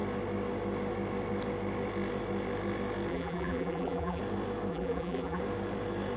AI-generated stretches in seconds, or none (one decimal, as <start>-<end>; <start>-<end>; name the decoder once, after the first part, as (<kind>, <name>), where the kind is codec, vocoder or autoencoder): 3.1-4.2 (vocoder, BigVGAN v2); 4.7-5.4